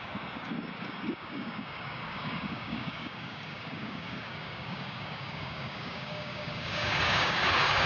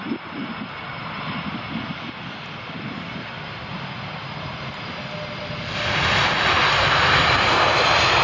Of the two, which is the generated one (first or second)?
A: first